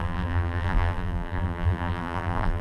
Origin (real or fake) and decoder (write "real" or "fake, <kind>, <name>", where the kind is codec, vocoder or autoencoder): fake, vocoder, BigVGAN v2